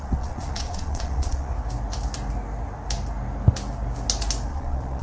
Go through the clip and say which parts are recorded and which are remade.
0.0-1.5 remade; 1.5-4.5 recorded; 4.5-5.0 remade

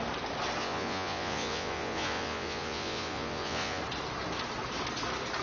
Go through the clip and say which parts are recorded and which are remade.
0.0-0.6 recorded; 0.6-3.8 remade; 3.8-5.4 recorded

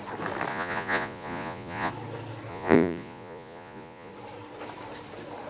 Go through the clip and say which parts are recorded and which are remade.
0.0-0.5 recorded; 0.5-1.9 remade; 1.9-2.5 recorded; 2.5-4.1 remade; 4.1-5.5 recorded

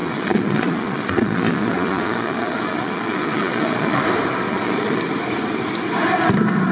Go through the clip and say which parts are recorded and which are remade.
0.0-4.0 remade; 4.0-4.5 recorded; 4.5-5.0 remade; 5.0-6.7 recorded